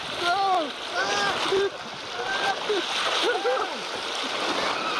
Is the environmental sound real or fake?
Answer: real